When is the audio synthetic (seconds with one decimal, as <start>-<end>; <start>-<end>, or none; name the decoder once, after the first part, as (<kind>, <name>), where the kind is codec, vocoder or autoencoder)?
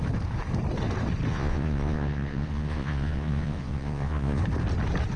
1.3-4.4 (vocoder, Vocos)